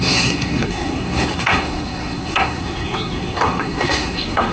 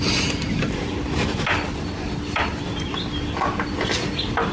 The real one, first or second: second